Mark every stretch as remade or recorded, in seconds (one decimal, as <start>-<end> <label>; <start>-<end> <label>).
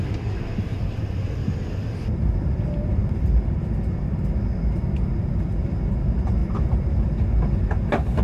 0.0-0.7 recorded; 0.7-1.7 remade; 1.7-8.2 recorded